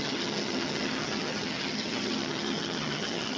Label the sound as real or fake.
fake